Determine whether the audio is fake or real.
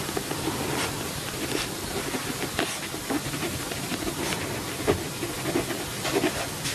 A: real